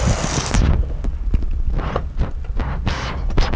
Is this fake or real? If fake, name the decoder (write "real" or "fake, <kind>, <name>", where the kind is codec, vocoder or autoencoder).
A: real